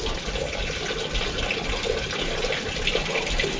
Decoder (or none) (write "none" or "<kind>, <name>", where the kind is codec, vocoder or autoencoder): none